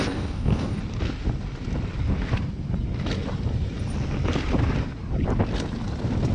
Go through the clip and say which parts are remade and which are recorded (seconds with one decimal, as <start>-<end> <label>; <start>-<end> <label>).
0.0-0.8 remade; 0.8-6.3 recorded